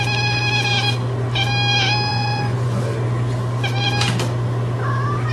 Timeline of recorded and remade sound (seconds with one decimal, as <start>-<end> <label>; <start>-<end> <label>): 0.0-2.1 recorded; 2.1-2.8 remade; 2.8-5.3 recorded